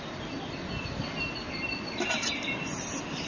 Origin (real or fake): real